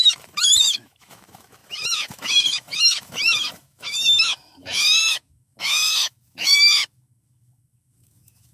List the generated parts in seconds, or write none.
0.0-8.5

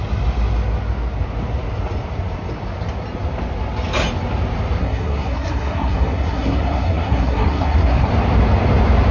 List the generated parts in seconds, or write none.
4.8-8.1

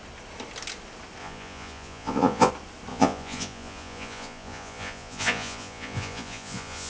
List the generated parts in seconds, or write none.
1.2-2.5; 2.9-6.9

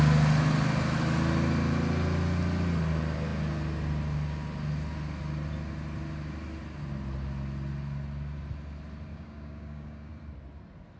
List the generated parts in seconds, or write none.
9.1-10.1